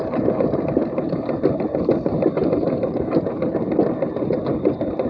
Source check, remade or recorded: remade